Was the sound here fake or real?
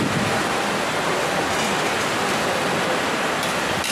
real